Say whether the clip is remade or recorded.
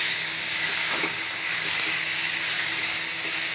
remade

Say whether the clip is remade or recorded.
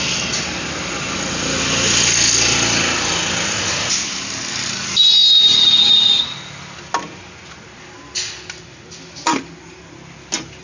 recorded